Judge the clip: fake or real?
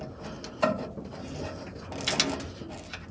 real